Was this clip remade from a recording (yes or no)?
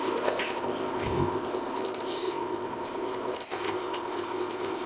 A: yes